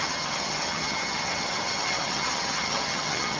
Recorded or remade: remade